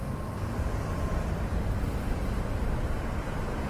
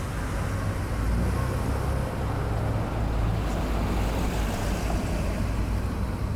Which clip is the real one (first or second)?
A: second